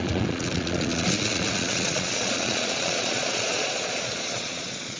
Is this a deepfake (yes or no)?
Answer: yes